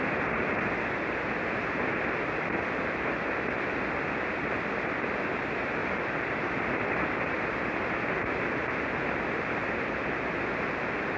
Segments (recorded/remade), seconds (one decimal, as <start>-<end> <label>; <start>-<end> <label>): 0.0-11.2 recorded